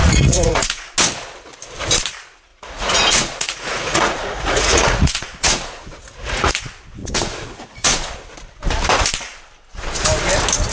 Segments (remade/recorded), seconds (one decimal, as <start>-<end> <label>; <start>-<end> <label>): 0.0-0.9 remade; 0.9-2.5 recorded; 2.5-6.5 remade; 6.5-7.0 recorded; 7.0-8.1 remade; 8.1-10.7 recorded